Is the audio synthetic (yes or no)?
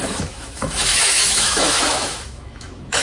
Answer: yes